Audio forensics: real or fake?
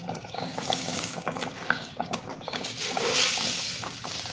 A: fake